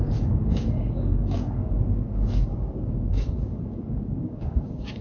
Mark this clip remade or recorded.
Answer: remade